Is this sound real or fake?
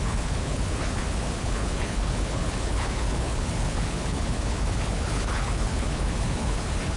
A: fake